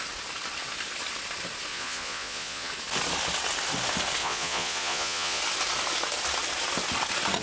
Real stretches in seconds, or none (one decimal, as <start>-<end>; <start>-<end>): 0.0-1.7; 2.7-4.2; 5.4-7.4